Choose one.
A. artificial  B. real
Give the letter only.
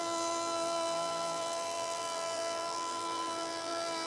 A